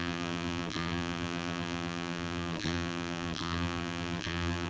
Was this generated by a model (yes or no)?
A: yes